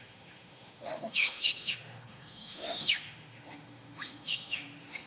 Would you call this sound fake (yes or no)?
yes